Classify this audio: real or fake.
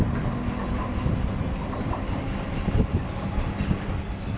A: real